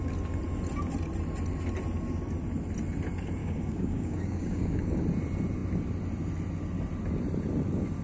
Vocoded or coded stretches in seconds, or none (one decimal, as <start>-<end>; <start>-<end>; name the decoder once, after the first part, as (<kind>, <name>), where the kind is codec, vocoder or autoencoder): 3.4-5.0 (codec, DAC)